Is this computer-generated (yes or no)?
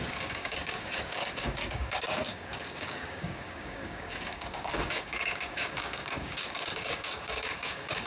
yes